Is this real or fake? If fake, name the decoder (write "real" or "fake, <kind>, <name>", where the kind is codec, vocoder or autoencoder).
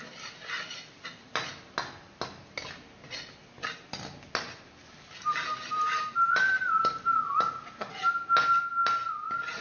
real